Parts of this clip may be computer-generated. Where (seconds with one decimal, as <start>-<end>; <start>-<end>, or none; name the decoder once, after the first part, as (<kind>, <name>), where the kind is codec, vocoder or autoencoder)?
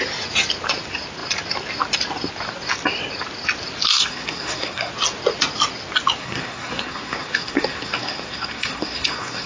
3.9-4.9 (codec, SNAC); 6.2-9.5